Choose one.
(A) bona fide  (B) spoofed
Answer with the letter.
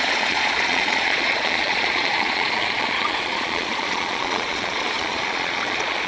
B